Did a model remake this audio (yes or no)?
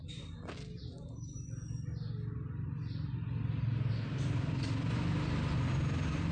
no